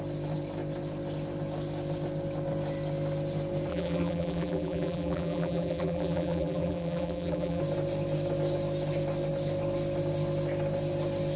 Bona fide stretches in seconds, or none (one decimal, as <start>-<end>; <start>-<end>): 0.0-3.7; 7.6-11.4